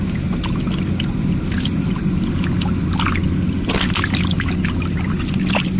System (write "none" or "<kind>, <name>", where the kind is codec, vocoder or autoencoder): none